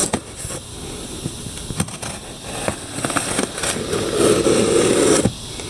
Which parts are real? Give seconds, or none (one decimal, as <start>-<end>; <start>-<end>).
0.0-5.7